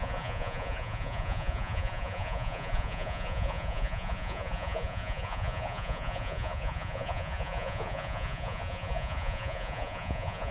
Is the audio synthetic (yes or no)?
yes